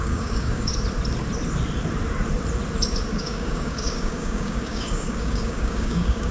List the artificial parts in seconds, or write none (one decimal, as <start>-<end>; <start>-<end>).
0.0-0.7; 3.1-6.3